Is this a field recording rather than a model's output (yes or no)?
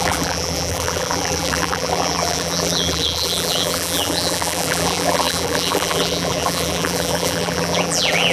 no